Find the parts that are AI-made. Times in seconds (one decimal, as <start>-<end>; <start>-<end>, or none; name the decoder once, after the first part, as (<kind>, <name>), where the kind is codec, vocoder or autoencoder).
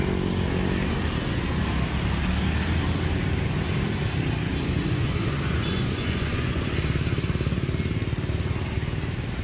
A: 4.5-6.7 (vocoder, Vocos)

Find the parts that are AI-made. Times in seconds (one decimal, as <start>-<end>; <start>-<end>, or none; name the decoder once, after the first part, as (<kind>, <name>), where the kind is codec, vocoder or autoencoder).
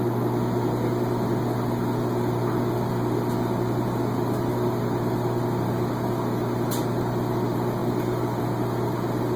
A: none